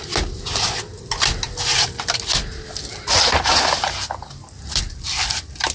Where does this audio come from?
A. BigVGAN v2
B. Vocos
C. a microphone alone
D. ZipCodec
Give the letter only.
C